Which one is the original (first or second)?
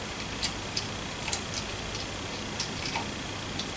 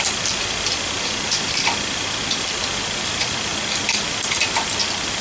first